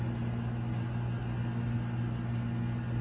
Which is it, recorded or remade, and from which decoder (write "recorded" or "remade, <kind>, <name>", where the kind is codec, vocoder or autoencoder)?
recorded